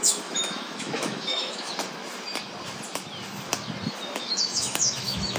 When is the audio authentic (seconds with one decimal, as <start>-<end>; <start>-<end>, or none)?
1.7-4.2